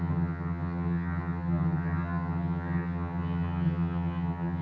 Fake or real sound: fake